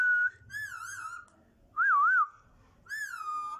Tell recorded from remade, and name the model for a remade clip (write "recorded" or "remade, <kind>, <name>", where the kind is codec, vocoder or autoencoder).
recorded